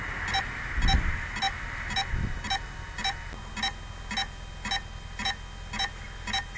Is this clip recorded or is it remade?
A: recorded